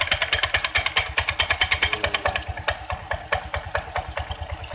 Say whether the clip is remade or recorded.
recorded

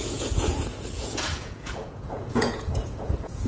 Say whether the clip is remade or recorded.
remade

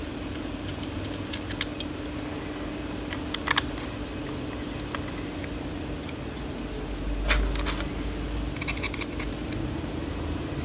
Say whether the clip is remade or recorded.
recorded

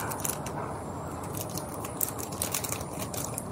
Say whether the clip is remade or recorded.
recorded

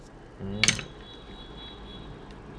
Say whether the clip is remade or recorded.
recorded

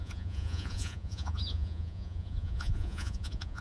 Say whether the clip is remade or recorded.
remade